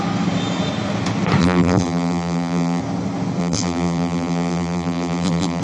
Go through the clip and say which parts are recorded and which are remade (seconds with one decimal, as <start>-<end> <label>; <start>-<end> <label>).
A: 0.0-1.4 recorded; 1.4-2.8 remade; 2.8-3.4 recorded; 3.4-5.6 remade